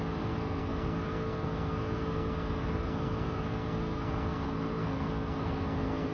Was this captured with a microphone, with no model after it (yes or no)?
no